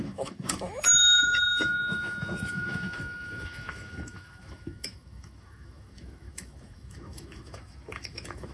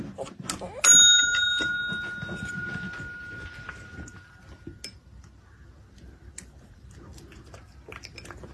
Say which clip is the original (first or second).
second